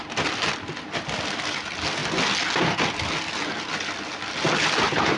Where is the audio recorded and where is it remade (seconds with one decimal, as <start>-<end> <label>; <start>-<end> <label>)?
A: 0.0-5.2 recorded